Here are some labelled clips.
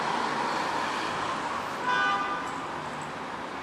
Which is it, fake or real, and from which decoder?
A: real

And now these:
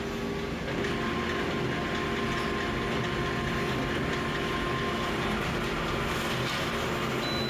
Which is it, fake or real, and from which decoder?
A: real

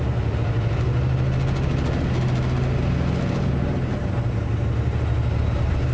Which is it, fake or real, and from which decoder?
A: real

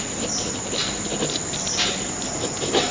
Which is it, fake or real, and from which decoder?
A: real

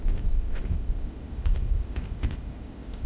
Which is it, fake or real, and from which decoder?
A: fake, codec, ZipCodec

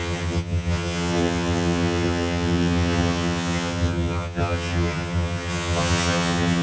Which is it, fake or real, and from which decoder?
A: fake, vocoder, HiFi-GAN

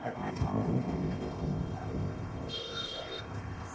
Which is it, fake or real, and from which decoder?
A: fake, codec, ZipCodec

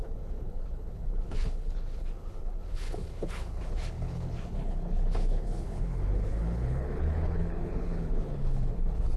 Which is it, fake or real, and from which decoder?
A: fake, codec, HILCodec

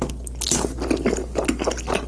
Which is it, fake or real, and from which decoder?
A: real